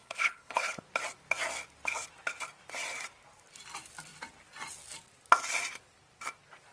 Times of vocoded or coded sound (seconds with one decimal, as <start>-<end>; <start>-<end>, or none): 0.0-0.8